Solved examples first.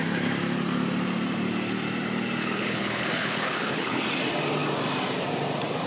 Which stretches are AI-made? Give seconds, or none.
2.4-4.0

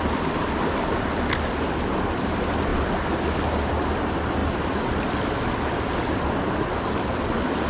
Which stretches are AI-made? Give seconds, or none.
none

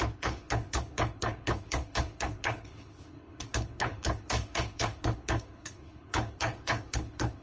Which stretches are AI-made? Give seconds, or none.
0.0-7.4

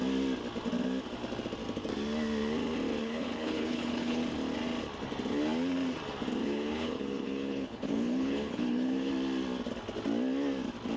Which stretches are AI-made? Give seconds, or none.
3.0-4.2; 6.4-9.1